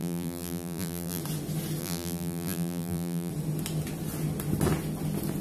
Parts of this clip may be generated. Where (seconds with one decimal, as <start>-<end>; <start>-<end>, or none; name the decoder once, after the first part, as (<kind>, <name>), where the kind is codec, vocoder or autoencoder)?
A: 0.0-1.2 (vocoder, BigVGAN v2); 1.8-3.3